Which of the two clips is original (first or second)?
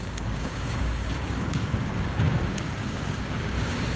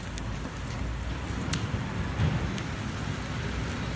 second